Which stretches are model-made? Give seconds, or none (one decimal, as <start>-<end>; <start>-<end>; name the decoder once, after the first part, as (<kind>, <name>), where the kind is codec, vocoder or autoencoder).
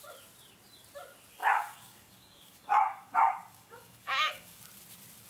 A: 1.4-4.6 (codec, DAC)